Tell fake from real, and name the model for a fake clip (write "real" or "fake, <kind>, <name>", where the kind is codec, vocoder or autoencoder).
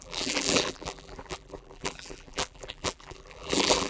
fake, vocoder, BigVGAN v2